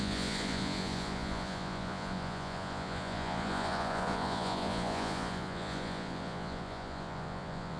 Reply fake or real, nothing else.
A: fake